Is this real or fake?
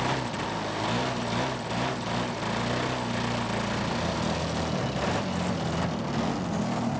real